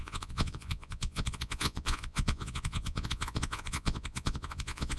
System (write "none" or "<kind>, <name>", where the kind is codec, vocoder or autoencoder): vocoder, Vocos